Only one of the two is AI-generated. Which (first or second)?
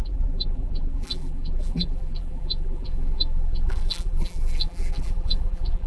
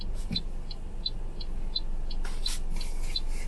first